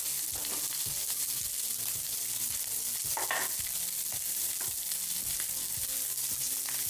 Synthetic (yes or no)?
no